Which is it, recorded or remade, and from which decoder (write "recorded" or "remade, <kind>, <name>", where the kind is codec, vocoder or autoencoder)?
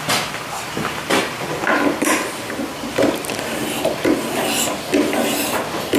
recorded